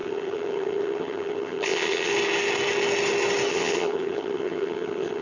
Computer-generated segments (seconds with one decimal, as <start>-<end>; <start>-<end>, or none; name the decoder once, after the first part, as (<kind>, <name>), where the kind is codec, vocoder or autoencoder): 0.0-2.1 (vocoder, HiFi-GAN); 3.5-5.2